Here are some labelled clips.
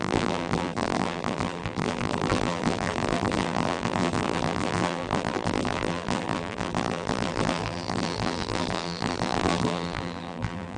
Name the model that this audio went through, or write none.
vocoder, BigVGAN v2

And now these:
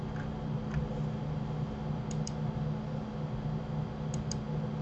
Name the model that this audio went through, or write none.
none